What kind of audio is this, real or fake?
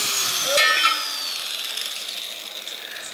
real